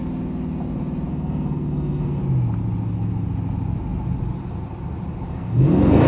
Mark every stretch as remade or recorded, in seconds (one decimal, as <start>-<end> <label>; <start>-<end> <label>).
0.0-1.1 recorded; 1.1-2.2 remade; 2.2-5.3 recorded; 5.3-6.1 remade